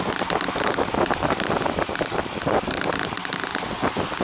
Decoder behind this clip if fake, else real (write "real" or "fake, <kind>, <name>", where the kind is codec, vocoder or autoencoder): real